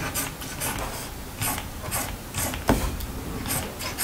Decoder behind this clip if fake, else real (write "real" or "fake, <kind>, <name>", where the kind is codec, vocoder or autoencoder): real